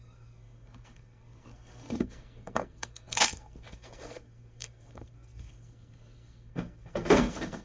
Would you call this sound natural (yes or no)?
no